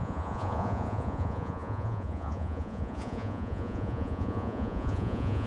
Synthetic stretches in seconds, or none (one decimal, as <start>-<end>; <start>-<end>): 0.0-5.5